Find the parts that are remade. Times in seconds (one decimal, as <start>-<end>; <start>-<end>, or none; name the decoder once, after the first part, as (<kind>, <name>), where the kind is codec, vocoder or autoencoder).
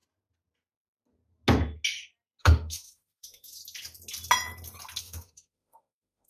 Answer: 2.4-3.6 (autoencoder, DAC-VAE); 5.0-6.3